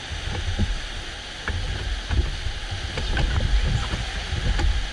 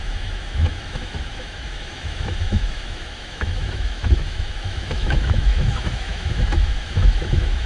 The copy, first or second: second